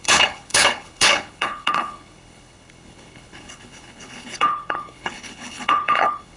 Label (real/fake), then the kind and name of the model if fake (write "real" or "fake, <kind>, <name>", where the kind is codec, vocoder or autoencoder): fake, codec, HILCodec